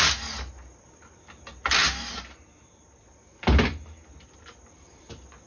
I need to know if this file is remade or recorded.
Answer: recorded